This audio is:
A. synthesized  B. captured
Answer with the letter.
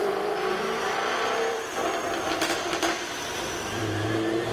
A